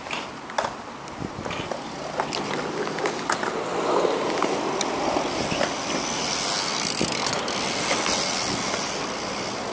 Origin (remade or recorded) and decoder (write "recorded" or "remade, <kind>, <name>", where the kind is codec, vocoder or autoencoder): recorded